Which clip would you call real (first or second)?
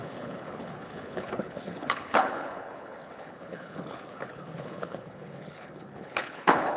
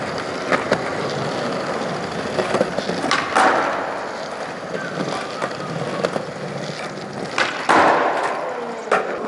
second